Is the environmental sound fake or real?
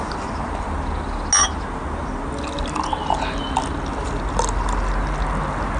real